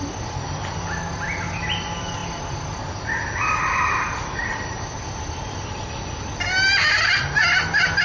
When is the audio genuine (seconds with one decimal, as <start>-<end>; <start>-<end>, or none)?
0.0-8.0